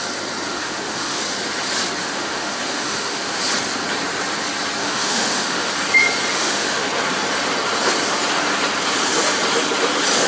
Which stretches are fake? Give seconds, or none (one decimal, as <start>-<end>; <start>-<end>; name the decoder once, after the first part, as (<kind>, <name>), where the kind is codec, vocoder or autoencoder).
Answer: 0.5-1.2 (autoencoder, DAC-VAE); 2.0-3.4; 4.8-5.7; 6.3-6.9